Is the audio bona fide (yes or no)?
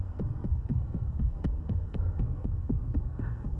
no